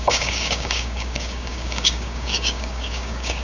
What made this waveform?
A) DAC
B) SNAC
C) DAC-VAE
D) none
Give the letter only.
A